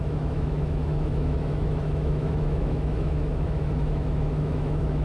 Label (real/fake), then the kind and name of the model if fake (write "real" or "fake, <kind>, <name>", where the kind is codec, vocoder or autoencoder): fake, autoencoder, DAC-VAE